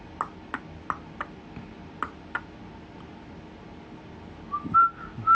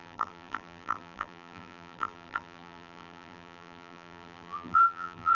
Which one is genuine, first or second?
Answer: first